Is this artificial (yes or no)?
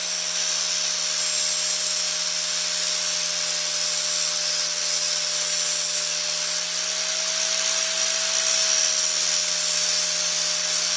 no